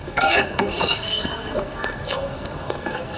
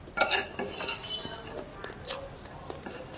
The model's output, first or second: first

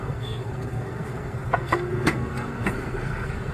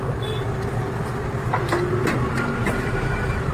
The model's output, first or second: first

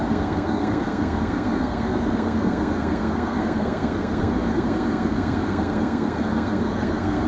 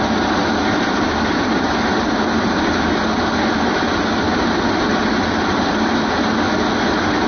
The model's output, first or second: first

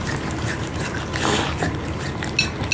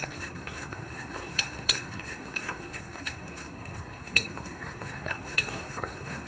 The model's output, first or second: second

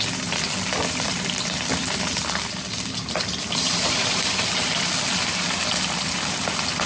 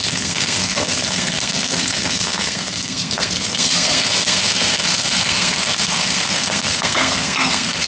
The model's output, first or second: second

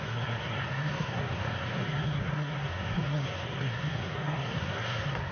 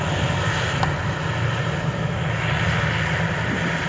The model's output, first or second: first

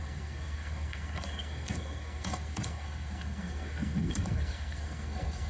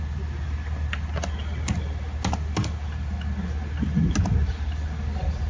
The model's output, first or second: first